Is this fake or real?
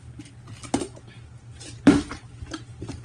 real